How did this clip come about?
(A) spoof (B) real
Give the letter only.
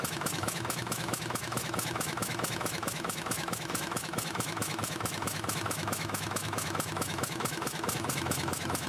A